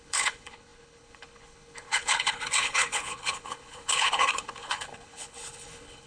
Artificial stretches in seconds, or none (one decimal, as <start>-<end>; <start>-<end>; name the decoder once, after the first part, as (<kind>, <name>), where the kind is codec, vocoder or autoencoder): 0.0-6.1 (codec, HILCodec)